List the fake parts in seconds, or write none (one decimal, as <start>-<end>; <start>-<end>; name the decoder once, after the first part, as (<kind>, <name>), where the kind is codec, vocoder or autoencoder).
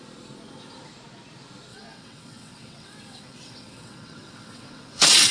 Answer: 1.7-5.3 (vocoder, WaveNeXt)